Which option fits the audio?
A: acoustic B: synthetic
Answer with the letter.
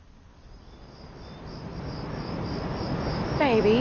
A